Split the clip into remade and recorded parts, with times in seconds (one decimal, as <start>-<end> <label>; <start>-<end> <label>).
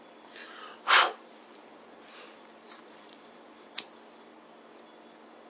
0.0-0.4 recorded; 0.4-3.7 remade; 3.7-5.5 recorded